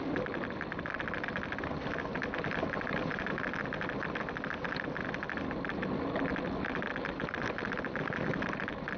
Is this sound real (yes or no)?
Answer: yes